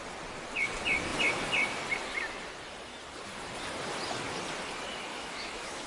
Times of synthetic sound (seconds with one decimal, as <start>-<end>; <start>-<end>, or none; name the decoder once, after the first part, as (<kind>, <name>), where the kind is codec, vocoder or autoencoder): 5.1-5.9 (autoencoder, DAC-VAE)